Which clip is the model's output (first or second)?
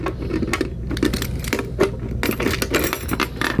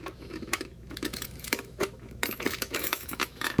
second